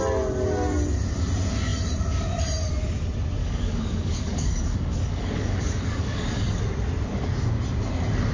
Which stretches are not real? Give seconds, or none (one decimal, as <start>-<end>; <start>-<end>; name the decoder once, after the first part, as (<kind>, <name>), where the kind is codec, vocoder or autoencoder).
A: 3.4-6.6 (codec, DAC)